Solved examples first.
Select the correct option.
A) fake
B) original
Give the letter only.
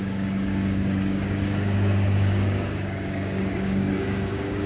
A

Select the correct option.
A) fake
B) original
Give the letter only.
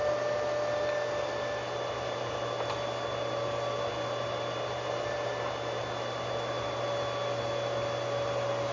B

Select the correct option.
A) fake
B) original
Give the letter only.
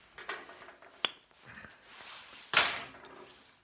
B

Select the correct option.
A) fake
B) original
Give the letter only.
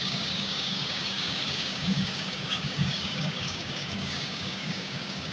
A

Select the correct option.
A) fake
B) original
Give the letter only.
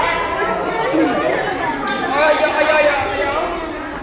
B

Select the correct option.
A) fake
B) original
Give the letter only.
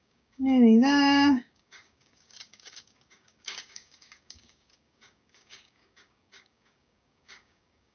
A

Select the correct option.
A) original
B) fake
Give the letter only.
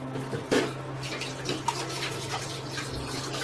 A